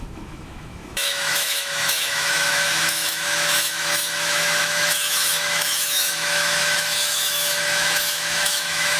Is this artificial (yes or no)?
yes